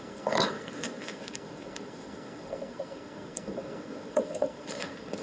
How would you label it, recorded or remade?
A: remade